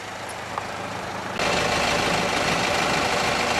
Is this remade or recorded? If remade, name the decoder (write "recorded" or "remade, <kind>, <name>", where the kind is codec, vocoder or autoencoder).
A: recorded